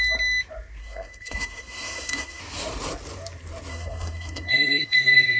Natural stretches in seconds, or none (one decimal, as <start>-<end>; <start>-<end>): 0.0-0.8; 2.4-3.7